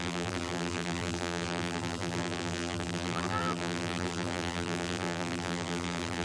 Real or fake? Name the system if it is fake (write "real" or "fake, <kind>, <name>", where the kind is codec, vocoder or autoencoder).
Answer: fake, vocoder, BigVGAN v2